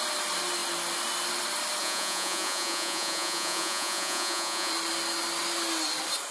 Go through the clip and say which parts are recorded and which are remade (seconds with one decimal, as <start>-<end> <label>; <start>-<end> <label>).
0.0-1.8 recorded; 1.8-4.7 remade; 4.7-6.3 recorded